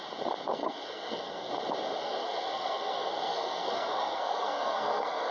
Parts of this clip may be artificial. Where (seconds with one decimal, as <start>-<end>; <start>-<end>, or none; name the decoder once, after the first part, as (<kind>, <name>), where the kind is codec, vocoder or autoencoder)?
0.5-1.5 (codec, SNAC); 2.0-5.3